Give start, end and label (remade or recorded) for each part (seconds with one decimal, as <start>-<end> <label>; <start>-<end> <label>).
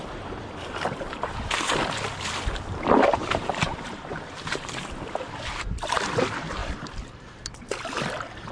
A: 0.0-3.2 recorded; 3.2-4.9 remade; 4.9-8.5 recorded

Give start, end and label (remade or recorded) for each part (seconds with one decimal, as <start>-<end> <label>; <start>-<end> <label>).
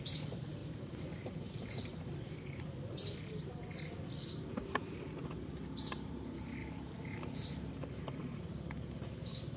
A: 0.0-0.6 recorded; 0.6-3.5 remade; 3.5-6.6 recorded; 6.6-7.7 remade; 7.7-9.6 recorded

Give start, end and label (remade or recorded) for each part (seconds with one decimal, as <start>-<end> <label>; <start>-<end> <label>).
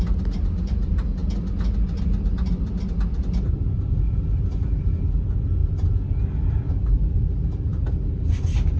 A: 0.0-8.8 recorded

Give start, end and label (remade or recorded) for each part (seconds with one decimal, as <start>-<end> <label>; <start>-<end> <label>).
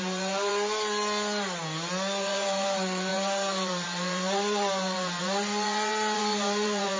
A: 0.0-0.5 remade; 0.5-2.2 recorded; 2.2-7.0 remade